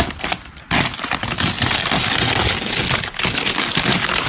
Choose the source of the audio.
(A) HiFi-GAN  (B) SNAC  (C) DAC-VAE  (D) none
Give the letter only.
D